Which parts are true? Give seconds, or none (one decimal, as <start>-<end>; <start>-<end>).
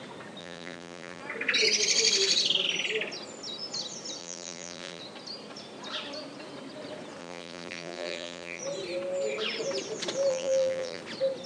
0.0-0.4; 1.2-4.2; 5.0-7.2; 8.6-10.3; 11.0-11.5